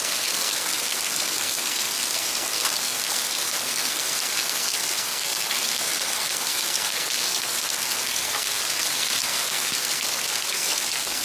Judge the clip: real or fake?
fake